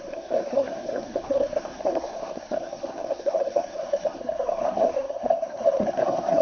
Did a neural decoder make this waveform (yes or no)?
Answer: yes